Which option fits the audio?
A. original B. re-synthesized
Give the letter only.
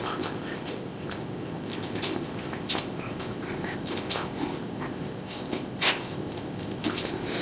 B